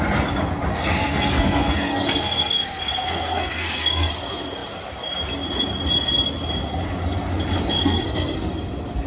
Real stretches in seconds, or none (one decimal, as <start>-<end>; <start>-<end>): 0.0-0.7; 4.1-7.8; 8.5-9.1